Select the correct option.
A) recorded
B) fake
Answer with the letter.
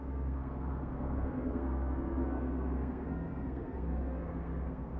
B